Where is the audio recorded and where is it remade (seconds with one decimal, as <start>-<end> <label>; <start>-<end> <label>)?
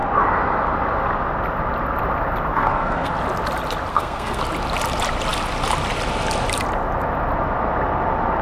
0.0-2.5 recorded; 2.5-3.1 remade; 3.1-3.9 recorded; 3.9-4.4 remade; 4.4-8.4 recorded